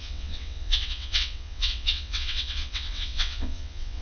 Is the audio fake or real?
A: fake